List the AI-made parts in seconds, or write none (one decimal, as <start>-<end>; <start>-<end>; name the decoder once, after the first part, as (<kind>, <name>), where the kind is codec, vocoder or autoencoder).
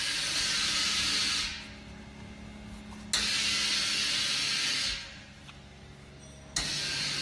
none